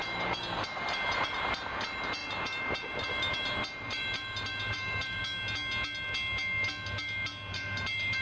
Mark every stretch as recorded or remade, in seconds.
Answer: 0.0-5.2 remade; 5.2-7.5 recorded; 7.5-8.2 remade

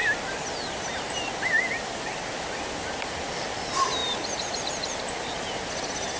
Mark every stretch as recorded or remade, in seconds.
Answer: 0.0-6.2 recorded

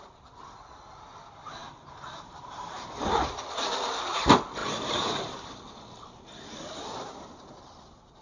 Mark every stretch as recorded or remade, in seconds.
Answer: 0.0-1.6 recorded; 1.6-2.8 remade; 2.8-4.6 recorded; 4.6-5.5 remade; 5.5-8.2 recorded

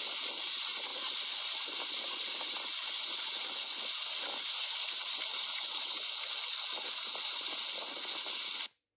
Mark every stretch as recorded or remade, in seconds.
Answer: 0.0-0.9 recorded; 0.9-2.4 remade; 2.4-9.0 recorded